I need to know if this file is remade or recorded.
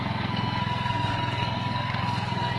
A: remade